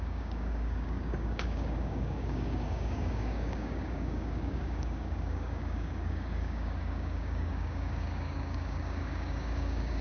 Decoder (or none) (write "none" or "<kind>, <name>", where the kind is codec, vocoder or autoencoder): codec, DAC